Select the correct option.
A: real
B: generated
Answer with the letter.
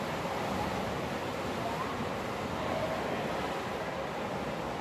A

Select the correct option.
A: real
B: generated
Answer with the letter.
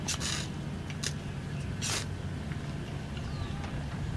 A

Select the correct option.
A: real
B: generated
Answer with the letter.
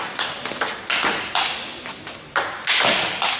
A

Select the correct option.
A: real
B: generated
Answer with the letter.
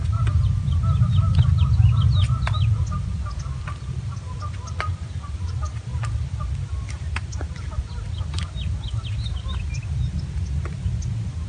A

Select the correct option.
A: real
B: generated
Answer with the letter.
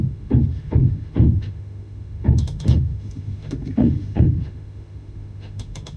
B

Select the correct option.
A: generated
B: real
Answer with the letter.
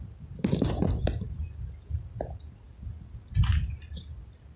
B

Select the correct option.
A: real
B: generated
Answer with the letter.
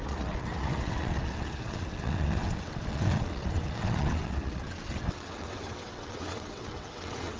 B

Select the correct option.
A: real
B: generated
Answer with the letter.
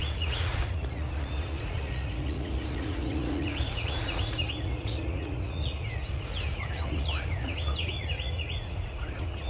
B